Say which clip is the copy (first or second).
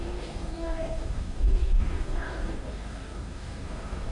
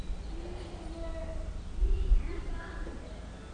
first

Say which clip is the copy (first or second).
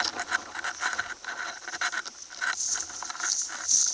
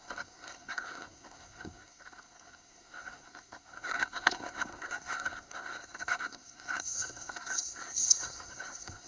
second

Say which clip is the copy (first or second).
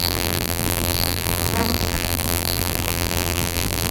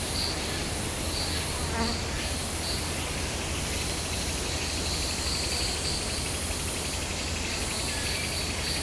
first